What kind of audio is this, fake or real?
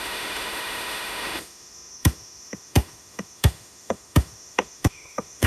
fake